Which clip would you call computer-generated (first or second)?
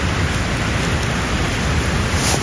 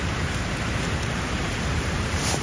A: second